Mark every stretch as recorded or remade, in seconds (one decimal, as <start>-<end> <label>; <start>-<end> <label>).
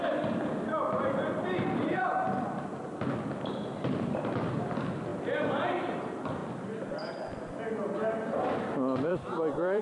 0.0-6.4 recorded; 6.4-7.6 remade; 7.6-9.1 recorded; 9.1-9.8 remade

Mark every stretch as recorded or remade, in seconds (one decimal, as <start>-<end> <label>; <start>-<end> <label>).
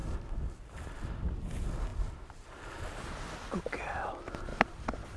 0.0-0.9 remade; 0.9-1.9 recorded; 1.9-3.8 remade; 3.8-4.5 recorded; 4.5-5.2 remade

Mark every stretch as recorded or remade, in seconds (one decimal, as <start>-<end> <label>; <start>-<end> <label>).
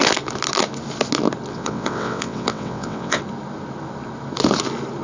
0.0-1.5 recorded; 1.5-3.2 remade; 3.2-5.0 recorded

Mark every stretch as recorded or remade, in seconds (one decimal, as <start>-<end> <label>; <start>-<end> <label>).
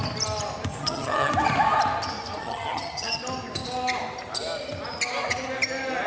0.0-0.7 recorded; 0.7-1.3 remade; 1.3-2.4 recorded; 2.4-3.2 remade; 3.2-6.1 recorded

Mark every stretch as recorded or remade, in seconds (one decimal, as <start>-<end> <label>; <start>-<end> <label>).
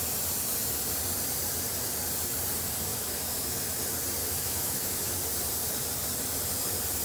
0.0-2.9 recorded; 2.9-3.8 remade; 3.8-4.2 recorded; 4.2-5.1 remade; 5.1-7.0 recorded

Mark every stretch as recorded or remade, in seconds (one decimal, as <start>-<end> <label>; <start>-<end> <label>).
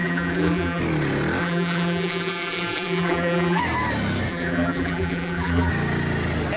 0.0-0.8 remade; 0.8-1.4 recorded; 1.4-3.6 remade; 3.6-4.3 recorded; 4.3-5.7 remade; 5.7-6.6 recorded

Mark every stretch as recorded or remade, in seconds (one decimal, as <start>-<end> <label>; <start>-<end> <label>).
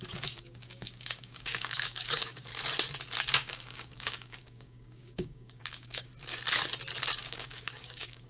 0.0-2.5 remade; 2.5-3.2 recorded; 3.2-6.1 remade; 6.1-7.2 recorded; 7.2-8.3 remade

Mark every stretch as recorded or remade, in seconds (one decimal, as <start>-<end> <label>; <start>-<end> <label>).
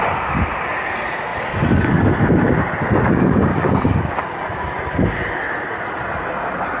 0.0-3.5 recorded; 3.5-4.2 remade; 4.2-6.8 recorded